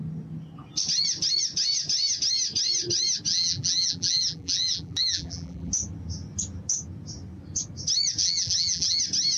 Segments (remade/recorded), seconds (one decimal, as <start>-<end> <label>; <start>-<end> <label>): 0.0-3.3 recorded; 3.3-5.7 remade; 5.7-8.2 recorded; 8.2-9.0 remade; 9.0-9.4 recorded